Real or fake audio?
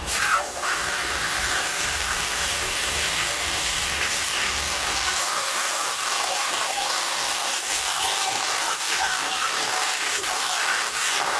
fake